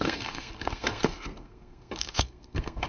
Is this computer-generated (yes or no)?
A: yes